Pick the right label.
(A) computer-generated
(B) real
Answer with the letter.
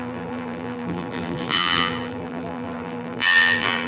A